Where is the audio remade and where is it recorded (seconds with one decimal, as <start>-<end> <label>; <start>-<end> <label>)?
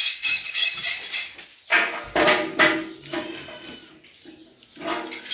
0.0-0.7 remade; 0.7-5.3 recorded